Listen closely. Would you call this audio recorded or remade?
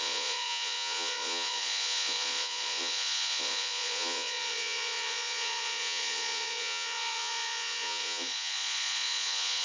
remade